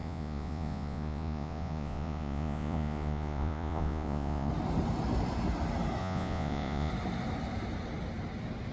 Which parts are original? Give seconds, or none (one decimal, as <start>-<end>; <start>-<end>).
4.5-6.0; 6.9-8.7